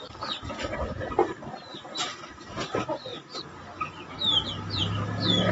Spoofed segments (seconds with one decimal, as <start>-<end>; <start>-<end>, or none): none